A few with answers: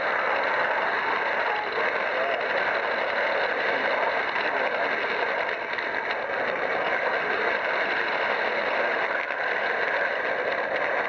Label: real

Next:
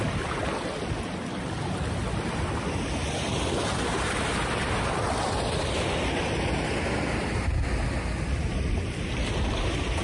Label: real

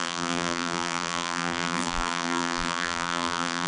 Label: fake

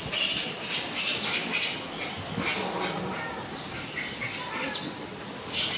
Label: real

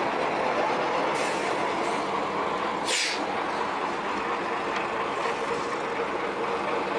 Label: real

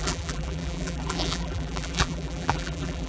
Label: fake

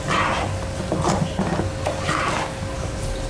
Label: real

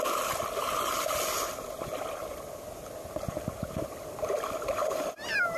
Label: real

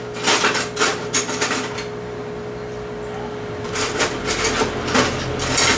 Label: real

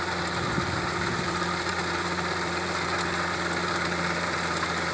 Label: fake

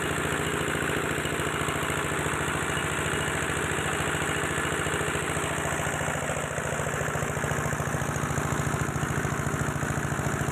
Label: real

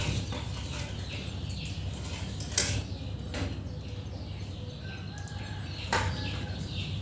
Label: real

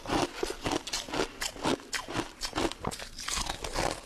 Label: real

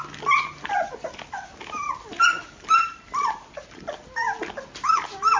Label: real